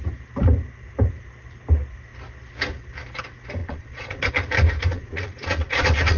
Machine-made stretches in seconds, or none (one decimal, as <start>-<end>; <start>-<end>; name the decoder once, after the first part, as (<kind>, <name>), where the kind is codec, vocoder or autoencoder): 3.6-4.3 (vocoder, Vocos); 4.9-6.2